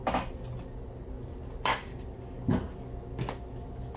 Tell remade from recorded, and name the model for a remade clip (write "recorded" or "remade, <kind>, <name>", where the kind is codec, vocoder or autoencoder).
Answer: recorded